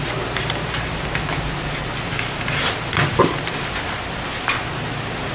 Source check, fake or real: real